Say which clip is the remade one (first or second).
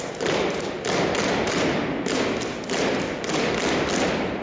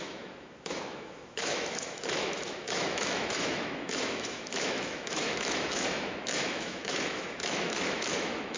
second